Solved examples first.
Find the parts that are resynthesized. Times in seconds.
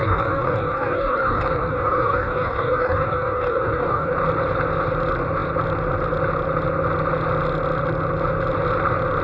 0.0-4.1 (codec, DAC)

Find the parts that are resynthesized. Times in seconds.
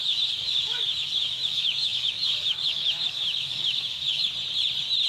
0.0-4.2 (codec, DAC)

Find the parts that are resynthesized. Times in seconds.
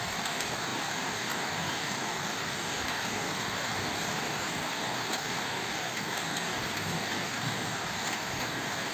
0.0-8.9 (codec, DAC)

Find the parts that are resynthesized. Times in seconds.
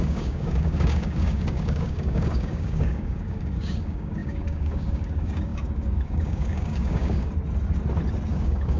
0.0-7.3 (codec, DAC); 8.3-8.8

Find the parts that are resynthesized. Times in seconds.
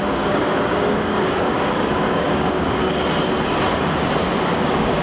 0.0-2.8 (codec, DAC); 4.4-5.0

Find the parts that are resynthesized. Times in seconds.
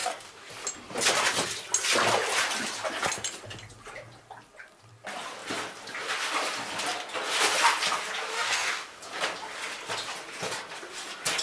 0.0-0.5 (codec, DAC); 8.3-9.0